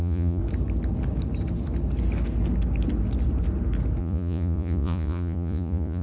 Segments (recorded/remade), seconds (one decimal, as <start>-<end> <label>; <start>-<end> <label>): 0.0-0.4 remade; 0.4-4.0 recorded; 4.0-6.0 remade